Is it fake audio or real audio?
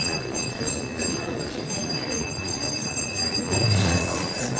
fake